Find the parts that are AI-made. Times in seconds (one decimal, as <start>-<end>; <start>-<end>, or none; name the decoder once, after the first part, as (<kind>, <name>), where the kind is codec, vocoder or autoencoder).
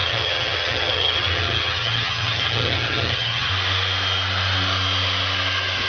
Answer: 0.0-3.5 (vocoder, HiFi-GAN)